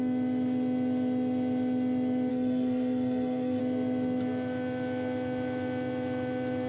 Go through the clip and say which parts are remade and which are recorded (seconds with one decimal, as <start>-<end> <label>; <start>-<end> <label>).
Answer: 0.0-2.3 recorded; 2.3-3.6 remade; 3.6-6.7 recorded